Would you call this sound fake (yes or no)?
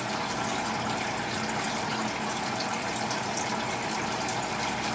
no